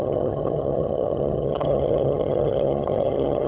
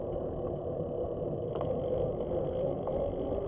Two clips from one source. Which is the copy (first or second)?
first